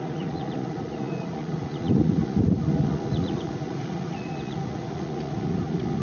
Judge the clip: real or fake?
fake